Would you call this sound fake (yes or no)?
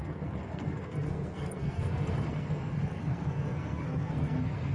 yes